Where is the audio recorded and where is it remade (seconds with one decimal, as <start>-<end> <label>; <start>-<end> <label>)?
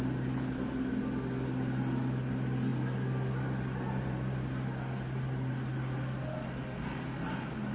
0.0-7.7 recorded